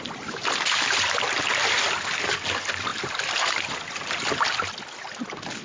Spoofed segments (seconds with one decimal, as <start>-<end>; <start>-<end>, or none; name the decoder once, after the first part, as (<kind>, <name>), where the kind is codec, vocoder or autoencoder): none